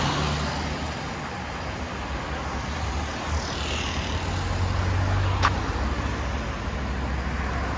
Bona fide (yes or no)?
yes